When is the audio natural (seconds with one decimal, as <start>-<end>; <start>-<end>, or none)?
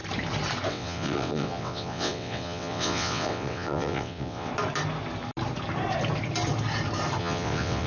0.0-0.7; 4.5-7.2